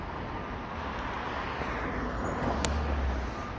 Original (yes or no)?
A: yes